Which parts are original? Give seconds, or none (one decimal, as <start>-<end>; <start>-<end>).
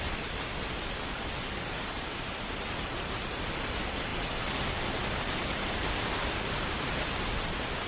0.0-7.9